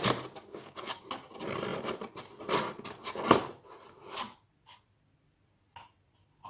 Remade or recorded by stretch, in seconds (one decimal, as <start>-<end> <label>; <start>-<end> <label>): 0.0-0.5 recorded; 0.5-1.0 remade; 1.0-6.5 recorded